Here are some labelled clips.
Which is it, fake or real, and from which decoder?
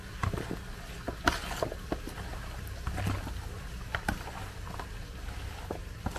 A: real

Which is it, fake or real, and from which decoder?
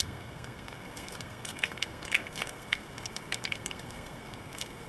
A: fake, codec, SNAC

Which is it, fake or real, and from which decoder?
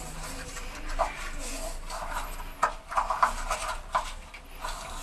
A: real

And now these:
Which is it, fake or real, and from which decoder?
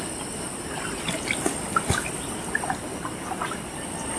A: real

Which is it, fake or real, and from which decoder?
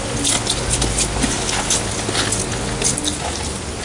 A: real